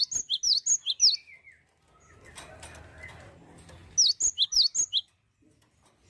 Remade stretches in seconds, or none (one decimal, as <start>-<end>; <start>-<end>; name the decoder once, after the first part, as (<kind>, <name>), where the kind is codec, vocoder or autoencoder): none